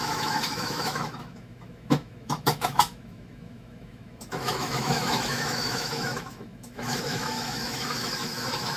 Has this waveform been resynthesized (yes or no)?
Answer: yes